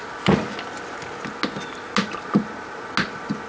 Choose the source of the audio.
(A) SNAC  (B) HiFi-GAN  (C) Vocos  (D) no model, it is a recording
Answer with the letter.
D